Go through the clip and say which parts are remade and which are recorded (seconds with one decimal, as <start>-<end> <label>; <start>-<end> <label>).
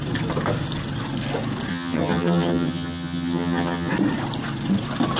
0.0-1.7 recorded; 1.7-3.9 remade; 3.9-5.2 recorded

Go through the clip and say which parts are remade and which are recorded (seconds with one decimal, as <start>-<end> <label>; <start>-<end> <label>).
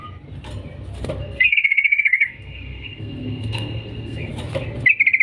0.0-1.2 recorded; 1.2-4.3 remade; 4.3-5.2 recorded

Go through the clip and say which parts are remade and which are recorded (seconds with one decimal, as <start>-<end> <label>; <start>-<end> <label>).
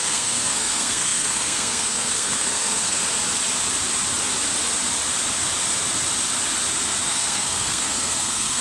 0.0-3.0 remade; 3.0-7.0 recorded; 7.0-8.6 remade